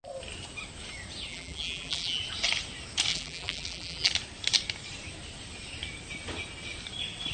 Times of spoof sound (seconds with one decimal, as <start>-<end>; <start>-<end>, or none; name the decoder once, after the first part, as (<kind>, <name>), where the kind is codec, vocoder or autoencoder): 1.3-2.2 (vocoder, BigVGAN v2); 3.1-4.1